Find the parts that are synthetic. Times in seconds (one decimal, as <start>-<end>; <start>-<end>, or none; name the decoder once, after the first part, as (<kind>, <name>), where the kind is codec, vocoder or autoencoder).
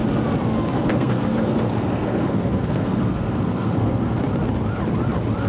0.9-4.2 (codec, SNAC)